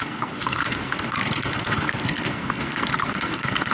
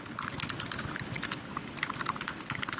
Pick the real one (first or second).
second